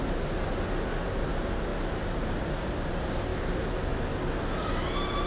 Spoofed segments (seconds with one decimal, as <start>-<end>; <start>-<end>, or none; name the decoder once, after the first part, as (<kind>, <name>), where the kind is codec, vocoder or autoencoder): none